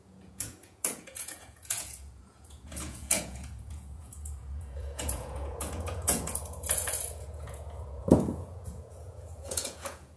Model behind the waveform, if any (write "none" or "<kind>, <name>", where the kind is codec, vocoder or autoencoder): vocoder, Vocos